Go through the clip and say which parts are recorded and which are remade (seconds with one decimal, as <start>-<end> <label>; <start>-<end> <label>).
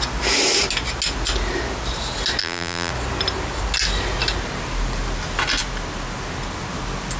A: 0.0-2.4 recorded; 2.4-2.9 remade; 2.9-7.2 recorded